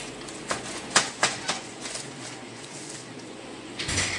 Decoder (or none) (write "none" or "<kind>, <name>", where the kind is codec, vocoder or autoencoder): vocoder, Vocos